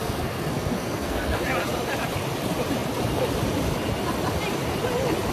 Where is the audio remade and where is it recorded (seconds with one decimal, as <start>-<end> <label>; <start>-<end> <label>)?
0.0-1.4 remade; 1.4-5.3 recorded

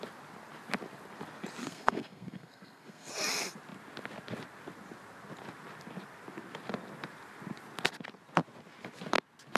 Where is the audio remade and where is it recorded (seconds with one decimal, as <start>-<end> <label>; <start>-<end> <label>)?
0.0-1.6 recorded; 1.6-3.1 remade; 3.1-9.6 recorded

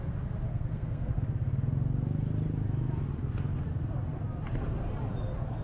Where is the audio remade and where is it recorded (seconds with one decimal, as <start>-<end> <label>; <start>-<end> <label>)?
0.0-0.5 recorded; 0.5-1.2 remade; 1.2-5.6 recorded